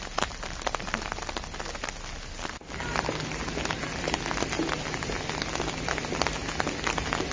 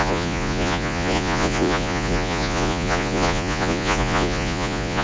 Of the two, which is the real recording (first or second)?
first